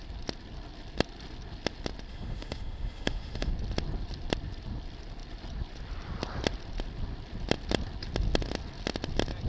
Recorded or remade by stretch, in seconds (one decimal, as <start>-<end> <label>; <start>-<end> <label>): 0.0-2.1 recorded; 2.1-3.5 remade; 3.5-9.5 recorded